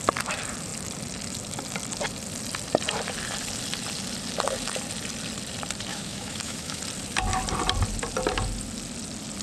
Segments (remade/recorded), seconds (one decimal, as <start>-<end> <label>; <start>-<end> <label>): 0.0-5.9 recorded; 5.9-6.8 remade; 6.8-9.4 recorded

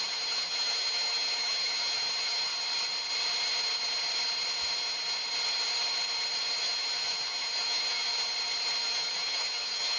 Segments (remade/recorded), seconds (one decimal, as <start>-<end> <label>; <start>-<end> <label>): 0.0-2.5 remade; 2.5-6.6 recorded; 6.6-8.1 remade; 8.1-8.8 recorded; 8.8-10.0 remade

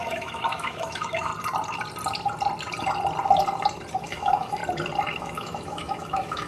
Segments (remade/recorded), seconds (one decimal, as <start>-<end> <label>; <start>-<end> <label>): 0.0-1.3 remade; 1.3-4.0 recorded; 4.0-4.6 remade; 4.6-5.2 recorded; 5.2-6.5 remade

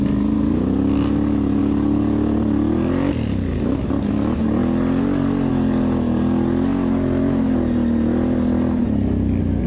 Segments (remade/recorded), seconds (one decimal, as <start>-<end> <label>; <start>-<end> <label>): 0.0-9.7 recorded

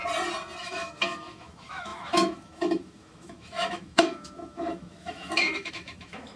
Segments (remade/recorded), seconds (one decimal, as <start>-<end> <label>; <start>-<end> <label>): 0.0-0.6 recorded; 0.6-6.4 remade